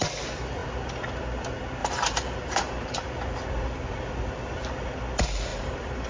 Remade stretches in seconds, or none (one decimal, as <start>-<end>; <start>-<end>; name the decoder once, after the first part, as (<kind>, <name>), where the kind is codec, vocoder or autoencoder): 1.8-3.1 (vocoder, BigVGAN v2); 5.5-6.1